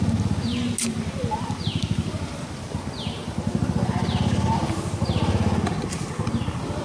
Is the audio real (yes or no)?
yes